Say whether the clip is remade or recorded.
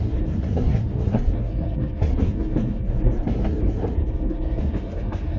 remade